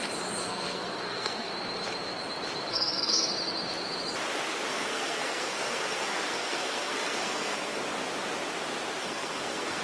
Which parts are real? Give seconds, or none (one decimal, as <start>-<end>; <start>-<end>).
0.0-0.4; 1.5-2.7; 3.3-4.7; 7.8-9.0